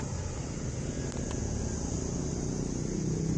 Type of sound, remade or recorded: recorded